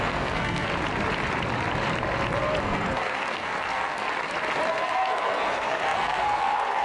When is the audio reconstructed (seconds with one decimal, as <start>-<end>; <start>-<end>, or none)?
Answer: 0.0-0.7; 2.6-4.0; 4.7-6.8